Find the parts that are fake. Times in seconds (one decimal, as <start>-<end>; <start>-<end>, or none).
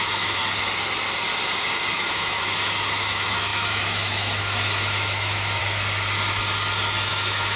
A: 0.0-0.4; 1.9-5.6; 7.1-7.6